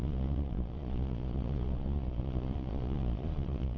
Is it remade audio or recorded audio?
remade